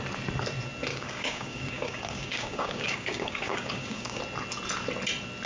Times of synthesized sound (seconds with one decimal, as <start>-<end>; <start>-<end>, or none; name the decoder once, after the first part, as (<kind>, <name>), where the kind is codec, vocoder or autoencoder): 0.9-4.2 (codec, DAC)